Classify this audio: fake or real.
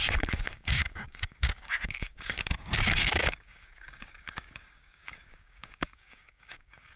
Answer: fake